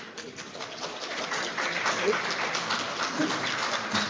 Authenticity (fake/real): real